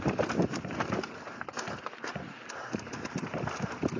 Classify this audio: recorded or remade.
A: recorded